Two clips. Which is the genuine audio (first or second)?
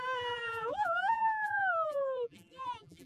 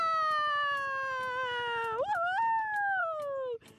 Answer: second